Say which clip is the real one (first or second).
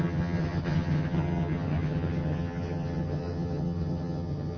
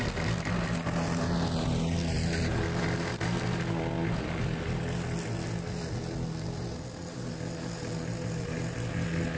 second